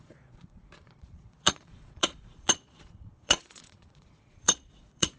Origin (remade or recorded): remade